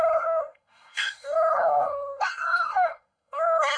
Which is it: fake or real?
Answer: fake